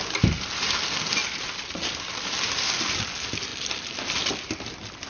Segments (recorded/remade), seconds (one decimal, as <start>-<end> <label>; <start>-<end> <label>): 0.0-5.1 recorded